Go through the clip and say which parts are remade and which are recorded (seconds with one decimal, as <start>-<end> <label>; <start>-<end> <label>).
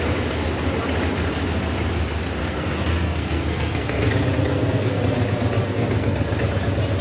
0.0-2.4 recorded; 2.4-4.1 remade; 4.1-4.5 recorded; 4.5-5.0 remade; 5.0-5.6 recorded; 5.6-6.3 remade; 6.3-7.0 recorded